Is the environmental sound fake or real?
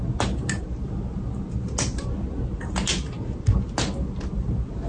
real